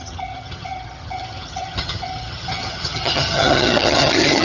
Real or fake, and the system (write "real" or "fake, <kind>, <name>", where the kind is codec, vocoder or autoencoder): fake, vocoder, HiFi-GAN